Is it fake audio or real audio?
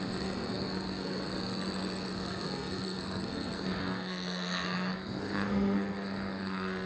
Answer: fake